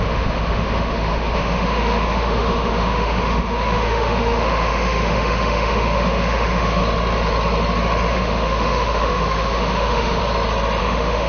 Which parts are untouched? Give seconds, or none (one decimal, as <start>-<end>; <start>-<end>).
6.8-8.1; 10.2-10.8